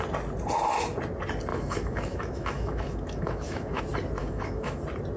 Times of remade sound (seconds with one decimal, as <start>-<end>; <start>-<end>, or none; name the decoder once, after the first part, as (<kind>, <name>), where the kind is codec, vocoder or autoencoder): 1.5-3.8 (autoencoder, DAC-VAE); 4.2-4.8